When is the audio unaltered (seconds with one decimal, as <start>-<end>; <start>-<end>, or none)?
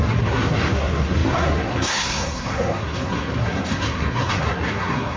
none